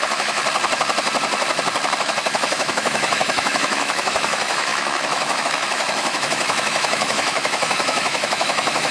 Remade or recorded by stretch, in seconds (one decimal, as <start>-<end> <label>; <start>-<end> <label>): 0.0-0.4 remade; 0.4-2.0 recorded; 2.0-8.9 remade